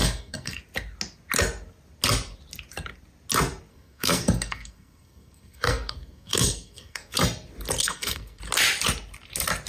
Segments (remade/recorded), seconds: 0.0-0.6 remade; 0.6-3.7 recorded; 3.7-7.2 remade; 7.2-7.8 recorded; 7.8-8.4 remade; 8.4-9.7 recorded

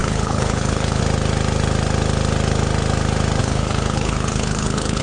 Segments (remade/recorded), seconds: 0.0-1.0 remade; 1.0-3.4 recorded; 3.4-5.0 remade

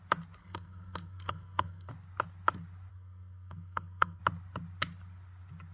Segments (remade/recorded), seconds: 0.0-0.4 recorded; 0.4-1.9 remade; 1.9-2.9 recorded; 2.9-4.2 remade; 4.2-5.7 recorded

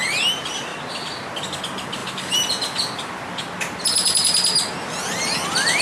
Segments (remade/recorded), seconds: 0.0-0.7 recorded; 0.7-1.3 remade; 1.3-2.0 recorded; 2.0-3.6 remade; 3.6-5.8 recorded